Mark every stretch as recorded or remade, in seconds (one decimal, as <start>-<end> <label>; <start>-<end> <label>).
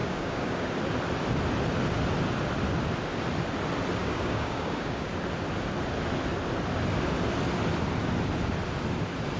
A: 0.0-0.7 remade; 0.7-4.0 recorded; 4.0-5.1 remade; 5.1-9.4 recorded